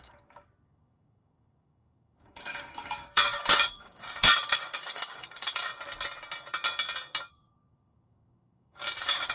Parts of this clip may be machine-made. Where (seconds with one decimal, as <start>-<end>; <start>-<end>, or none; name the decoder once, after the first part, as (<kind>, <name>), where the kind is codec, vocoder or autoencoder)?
0.0-5.7 (codec, DAC); 7.3-9.3